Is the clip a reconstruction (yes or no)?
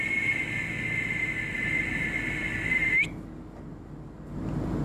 no